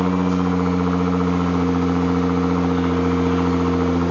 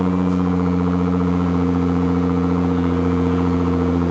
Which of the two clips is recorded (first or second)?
first